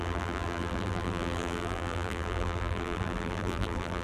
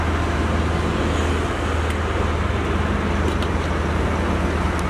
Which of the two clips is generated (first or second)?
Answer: first